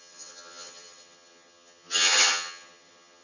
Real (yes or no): no